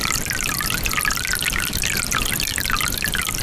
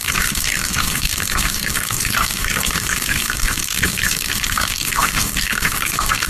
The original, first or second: first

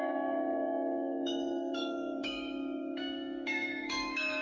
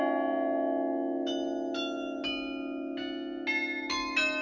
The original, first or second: second